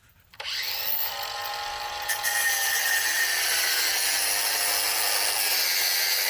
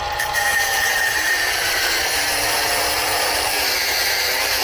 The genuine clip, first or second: first